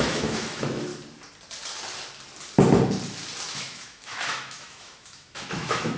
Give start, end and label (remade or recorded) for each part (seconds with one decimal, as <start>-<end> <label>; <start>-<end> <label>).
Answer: 0.0-0.9 remade; 0.9-3.5 recorded; 3.5-6.0 remade